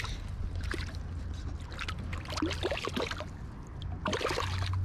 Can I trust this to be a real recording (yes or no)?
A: yes